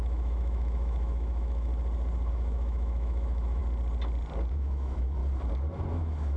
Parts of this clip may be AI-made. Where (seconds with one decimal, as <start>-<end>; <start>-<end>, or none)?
0.0-1.7; 2.3-3.6; 4.5-5.2; 5.9-6.4